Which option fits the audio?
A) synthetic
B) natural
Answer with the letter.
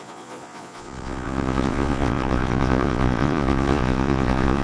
A